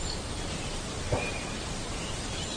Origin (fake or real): fake